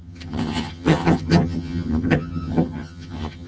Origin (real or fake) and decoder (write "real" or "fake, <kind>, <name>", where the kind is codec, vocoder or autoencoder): fake, vocoder, HiFi-GAN